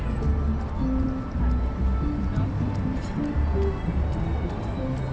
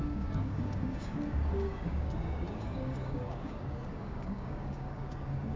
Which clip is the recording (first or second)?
first